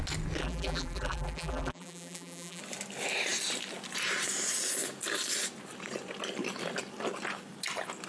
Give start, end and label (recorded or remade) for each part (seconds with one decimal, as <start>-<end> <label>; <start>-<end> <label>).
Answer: 0.0-0.4 recorded; 0.4-2.6 remade; 2.6-8.1 recorded